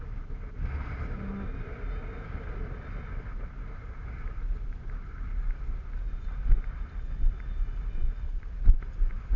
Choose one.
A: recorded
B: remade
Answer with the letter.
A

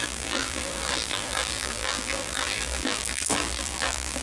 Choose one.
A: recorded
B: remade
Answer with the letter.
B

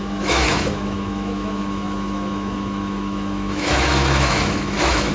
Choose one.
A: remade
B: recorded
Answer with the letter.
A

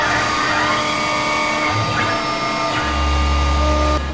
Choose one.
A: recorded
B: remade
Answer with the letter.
A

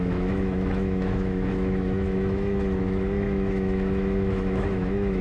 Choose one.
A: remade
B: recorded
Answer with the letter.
A